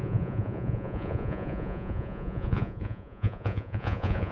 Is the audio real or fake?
fake